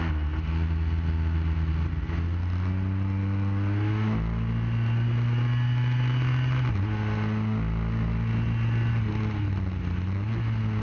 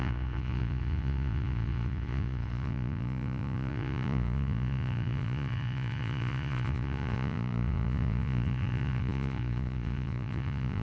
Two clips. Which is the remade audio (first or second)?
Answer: second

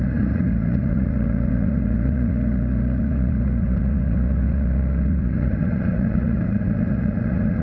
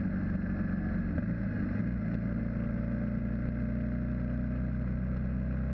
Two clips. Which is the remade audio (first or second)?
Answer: first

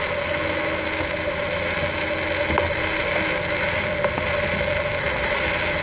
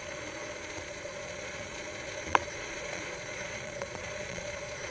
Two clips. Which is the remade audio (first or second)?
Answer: second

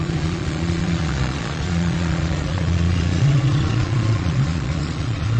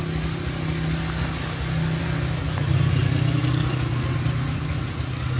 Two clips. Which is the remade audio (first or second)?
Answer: first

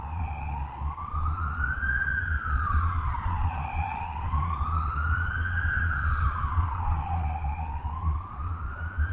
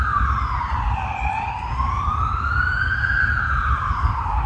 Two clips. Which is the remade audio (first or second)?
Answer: first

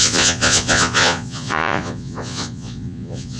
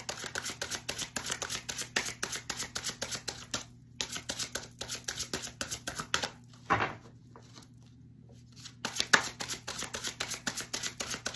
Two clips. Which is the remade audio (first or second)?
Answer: first